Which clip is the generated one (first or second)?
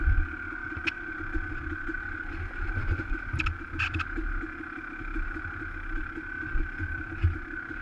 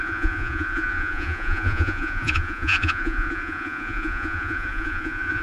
second